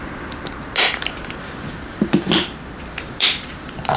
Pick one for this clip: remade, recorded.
remade